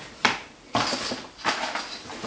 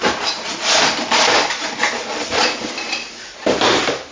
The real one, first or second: second